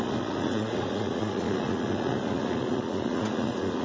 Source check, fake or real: fake